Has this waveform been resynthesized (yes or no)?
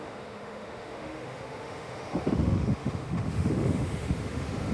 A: yes